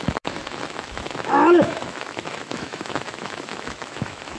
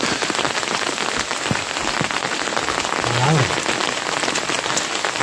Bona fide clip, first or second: second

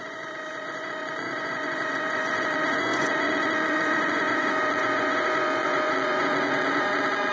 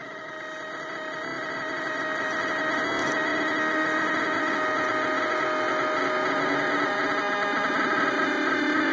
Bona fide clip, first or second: second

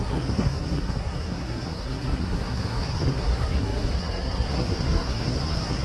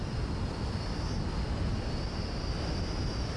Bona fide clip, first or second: second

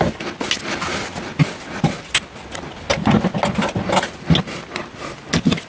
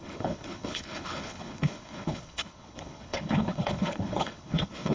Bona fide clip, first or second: first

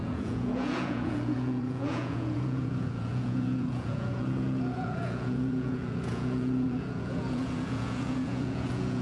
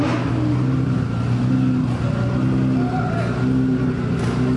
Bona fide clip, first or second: second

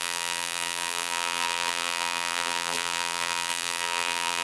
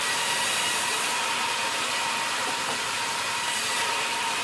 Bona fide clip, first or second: second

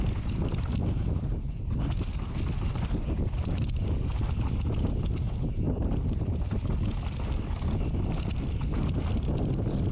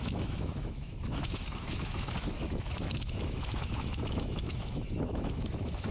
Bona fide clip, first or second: first